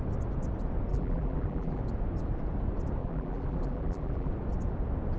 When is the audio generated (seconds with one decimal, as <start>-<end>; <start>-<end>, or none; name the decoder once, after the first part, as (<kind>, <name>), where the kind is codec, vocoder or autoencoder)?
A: 0.9-1.8 (vocoder, BigVGAN v2); 3.0-4.3